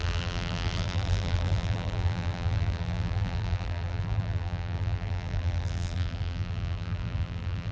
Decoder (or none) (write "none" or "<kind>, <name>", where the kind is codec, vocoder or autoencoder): vocoder, BigVGAN v2